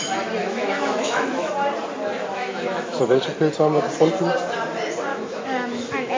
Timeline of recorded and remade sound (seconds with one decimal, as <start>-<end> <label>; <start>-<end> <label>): 0.0-0.4 recorded; 0.4-1.5 remade; 1.5-2.3 recorded; 2.3-3.0 remade; 3.0-5.1 recorded; 5.1-6.2 remade